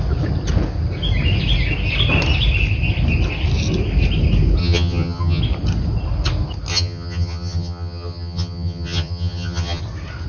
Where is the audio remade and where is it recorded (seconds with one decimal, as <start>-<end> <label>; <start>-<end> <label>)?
0.0-4.6 recorded; 4.6-5.4 remade; 5.4-6.7 recorded; 6.7-9.8 remade; 9.8-10.3 recorded